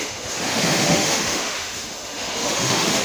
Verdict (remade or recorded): remade